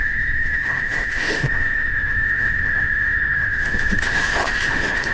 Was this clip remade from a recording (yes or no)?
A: yes